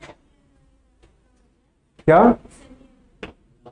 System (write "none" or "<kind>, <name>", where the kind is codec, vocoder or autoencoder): none